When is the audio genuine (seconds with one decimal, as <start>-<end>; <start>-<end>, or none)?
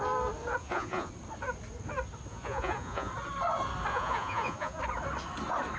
0.0-0.6; 1.1-2.3; 3.1-3.9; 4.8-5.8